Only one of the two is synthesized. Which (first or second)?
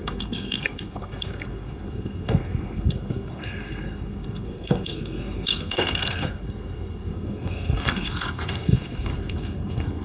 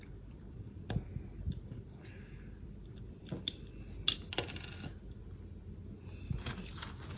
first